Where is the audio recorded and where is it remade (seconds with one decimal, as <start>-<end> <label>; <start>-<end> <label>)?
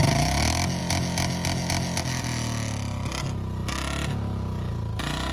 0.0-5.3 recorded